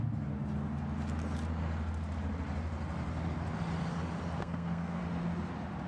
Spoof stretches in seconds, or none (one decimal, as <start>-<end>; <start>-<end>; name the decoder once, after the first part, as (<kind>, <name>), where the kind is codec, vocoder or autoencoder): 4.4-5.0 (codec, SNAC)